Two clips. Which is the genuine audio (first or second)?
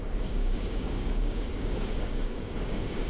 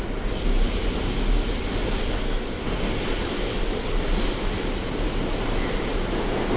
second